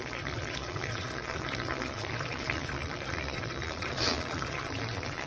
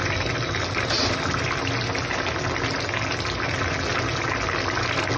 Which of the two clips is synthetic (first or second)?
first